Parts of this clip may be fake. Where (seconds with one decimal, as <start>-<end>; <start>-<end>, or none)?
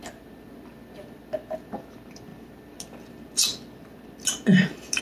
none